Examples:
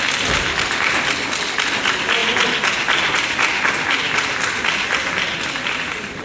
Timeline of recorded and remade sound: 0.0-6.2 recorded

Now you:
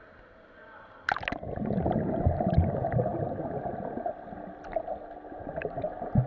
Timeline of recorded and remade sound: 0.0-6.3 recorded

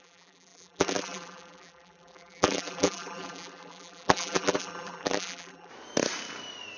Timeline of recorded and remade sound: 0.0-5.7 remade; 5.7-6.8 recorded

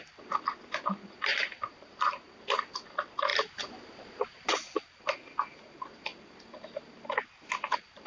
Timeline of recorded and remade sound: 0.0-1.3 recorded; 1.3-2.3 remade; 2.3-3.3 recorded; 3.3-4.5 remade; 4.5-8.1 recorded

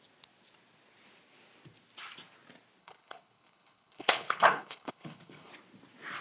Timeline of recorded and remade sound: 0.0-2.8 recorded; 2.8-5.5 remade; 5.5-6.2 recorded